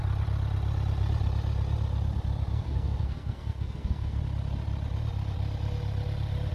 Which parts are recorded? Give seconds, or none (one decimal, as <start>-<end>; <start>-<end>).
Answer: 0.0-2.5; 4.2-6.5